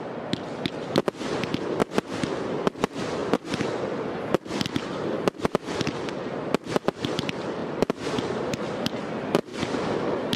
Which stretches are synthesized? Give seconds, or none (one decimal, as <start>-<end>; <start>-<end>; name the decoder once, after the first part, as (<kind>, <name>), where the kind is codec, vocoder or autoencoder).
none